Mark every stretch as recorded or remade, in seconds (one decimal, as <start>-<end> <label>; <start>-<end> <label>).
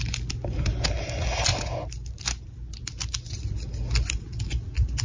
0.0-5.0 recorded